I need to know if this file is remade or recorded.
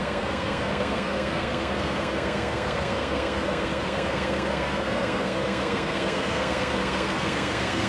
remade